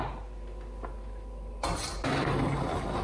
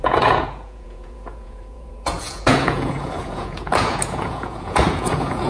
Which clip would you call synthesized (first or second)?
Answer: second